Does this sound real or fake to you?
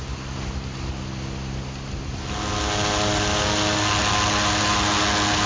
real